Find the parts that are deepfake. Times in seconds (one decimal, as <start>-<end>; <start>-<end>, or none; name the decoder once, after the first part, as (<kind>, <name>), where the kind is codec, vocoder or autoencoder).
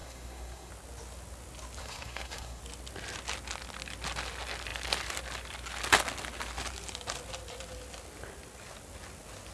0.0-0.7 (codec, SNAC); 1.8-2.6